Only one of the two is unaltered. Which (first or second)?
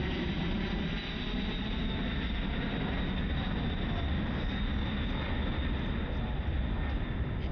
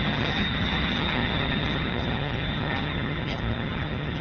first